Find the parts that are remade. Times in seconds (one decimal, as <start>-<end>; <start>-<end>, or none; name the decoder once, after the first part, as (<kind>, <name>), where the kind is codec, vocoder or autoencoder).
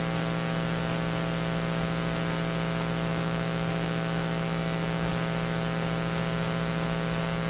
3.1-5.1 (autoencoder, DAC-VAE)